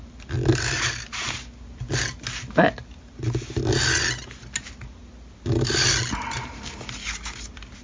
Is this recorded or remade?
recorded